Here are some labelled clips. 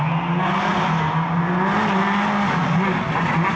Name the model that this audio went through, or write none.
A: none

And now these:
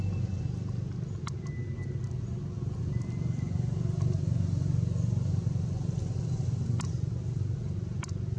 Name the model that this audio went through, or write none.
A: none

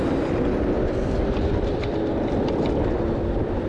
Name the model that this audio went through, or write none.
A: vocoder, BigVGAN v2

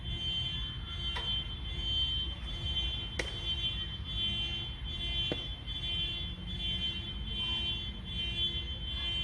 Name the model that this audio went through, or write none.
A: none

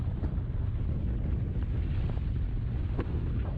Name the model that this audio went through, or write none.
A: none